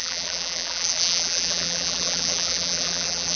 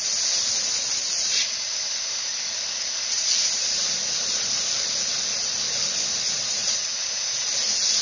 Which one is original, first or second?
second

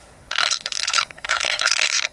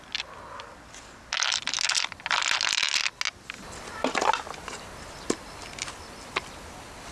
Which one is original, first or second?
second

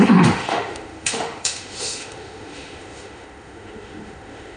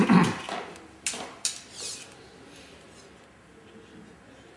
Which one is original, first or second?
second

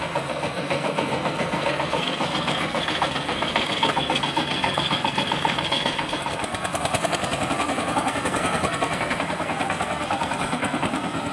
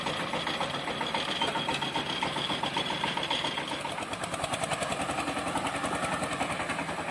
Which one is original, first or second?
second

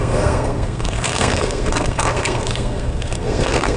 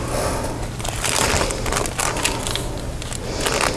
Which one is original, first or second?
second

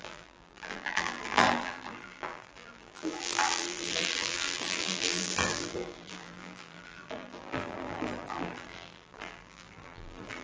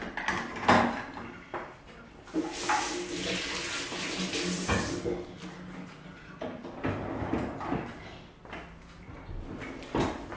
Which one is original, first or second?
second